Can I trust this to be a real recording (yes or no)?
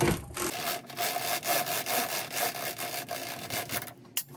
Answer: yes